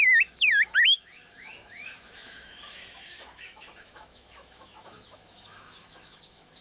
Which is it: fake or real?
fake